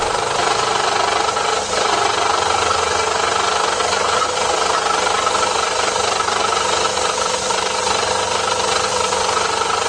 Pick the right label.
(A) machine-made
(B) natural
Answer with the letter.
B